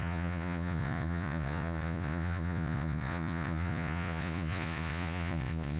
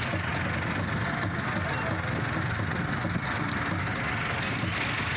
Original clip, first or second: second